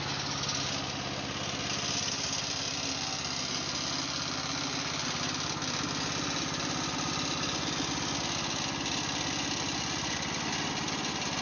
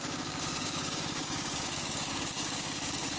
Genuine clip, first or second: first